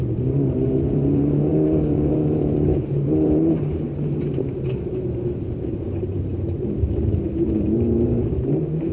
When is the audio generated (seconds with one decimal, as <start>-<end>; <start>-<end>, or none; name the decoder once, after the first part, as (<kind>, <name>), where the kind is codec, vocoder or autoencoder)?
0.0-4.9 (vocoder, BigVGAN v2); 5.4-8.9